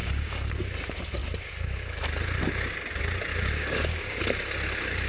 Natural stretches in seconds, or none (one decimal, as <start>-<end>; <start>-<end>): 0.5-3.3; 4.2-5.1